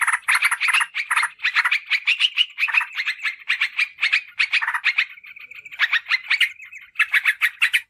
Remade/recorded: recorded